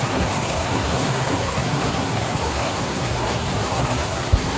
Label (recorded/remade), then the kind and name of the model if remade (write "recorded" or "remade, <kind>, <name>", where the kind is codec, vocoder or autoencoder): remade, codec, SNAC